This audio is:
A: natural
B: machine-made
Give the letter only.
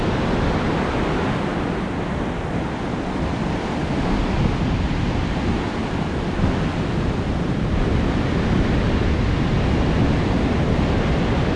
A